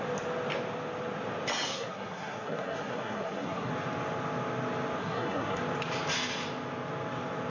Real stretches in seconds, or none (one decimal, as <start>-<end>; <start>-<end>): 0.0-1.7; 3.7-5.0; 5.6-7.5